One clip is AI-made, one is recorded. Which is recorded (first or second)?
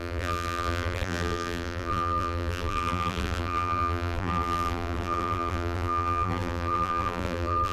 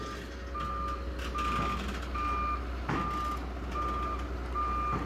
second